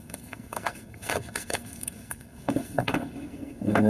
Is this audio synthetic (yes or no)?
yes